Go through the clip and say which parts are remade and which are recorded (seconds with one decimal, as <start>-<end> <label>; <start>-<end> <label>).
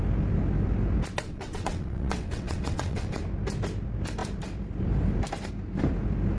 0.0-1.2 recorded; 1.2-3.2 remade; 3.2-6.4 recorded